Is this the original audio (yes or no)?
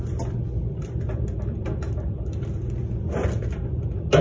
yes